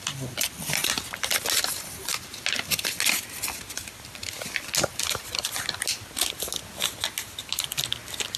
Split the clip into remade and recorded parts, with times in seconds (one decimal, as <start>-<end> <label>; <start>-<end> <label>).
0.0-8.4 recorded